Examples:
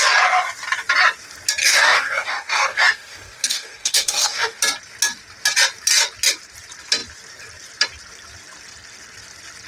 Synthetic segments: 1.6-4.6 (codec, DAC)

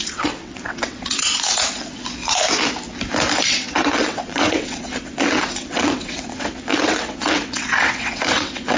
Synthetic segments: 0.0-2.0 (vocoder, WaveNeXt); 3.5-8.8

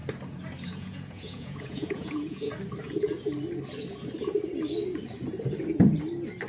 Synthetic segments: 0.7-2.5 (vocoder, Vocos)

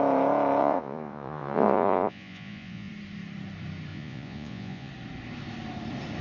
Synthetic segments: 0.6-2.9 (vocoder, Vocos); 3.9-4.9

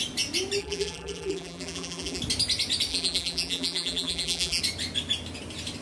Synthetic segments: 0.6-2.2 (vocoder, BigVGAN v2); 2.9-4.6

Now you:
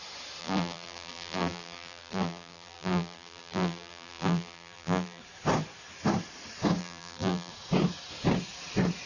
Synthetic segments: 0.4-5.2 (vocoder, BigVGAN v2); 6.8-7.5